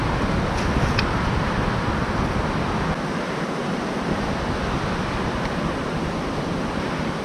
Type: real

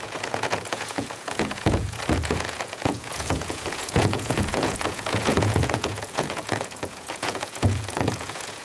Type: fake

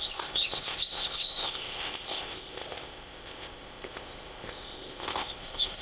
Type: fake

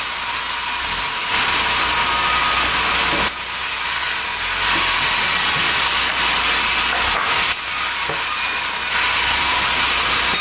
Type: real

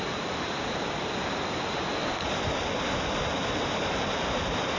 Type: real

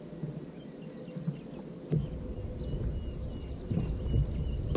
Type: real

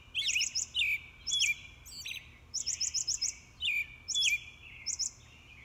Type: real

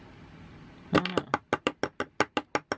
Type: real